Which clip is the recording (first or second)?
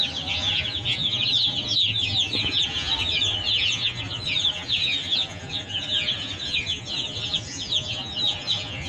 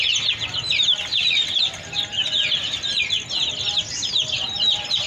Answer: second